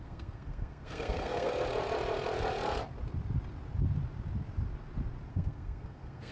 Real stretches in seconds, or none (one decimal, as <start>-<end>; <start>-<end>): 1.5-5.3